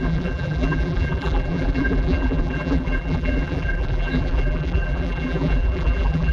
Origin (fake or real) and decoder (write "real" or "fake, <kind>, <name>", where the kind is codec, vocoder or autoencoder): fake, vocoder, BigVGAN v2